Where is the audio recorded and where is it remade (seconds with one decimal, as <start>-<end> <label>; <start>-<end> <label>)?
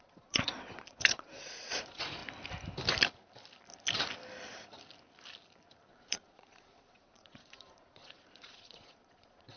0.0-2.2 remade; 2.2-5.9 recorded; 5.9-9.6 remade